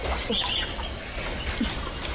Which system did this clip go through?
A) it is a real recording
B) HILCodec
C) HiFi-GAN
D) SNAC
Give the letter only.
A